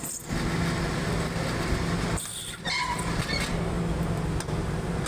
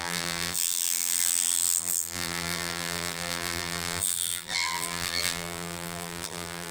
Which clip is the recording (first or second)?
first